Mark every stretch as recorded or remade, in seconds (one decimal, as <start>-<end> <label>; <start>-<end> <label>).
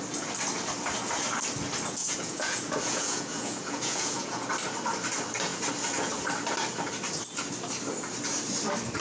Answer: 0.0-2.0 recorded; 2.0-4.5 remade; 4.5-9.0 recorded